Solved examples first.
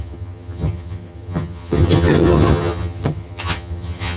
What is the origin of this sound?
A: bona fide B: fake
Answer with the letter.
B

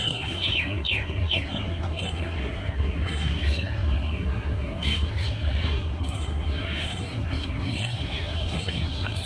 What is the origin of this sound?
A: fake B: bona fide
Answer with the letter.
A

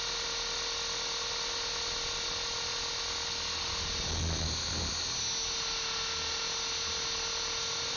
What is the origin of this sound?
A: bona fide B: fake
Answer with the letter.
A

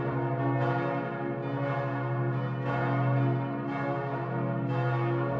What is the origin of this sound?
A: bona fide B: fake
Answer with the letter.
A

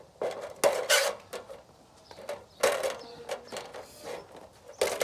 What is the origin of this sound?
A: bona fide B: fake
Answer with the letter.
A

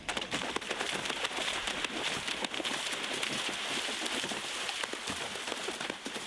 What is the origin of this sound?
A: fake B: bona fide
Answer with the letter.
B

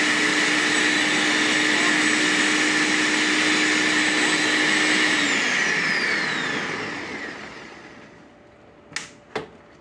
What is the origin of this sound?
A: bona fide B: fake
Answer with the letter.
A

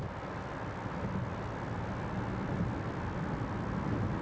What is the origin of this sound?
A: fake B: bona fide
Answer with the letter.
B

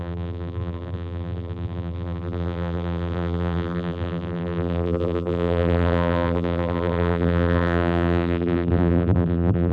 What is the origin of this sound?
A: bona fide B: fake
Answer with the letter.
B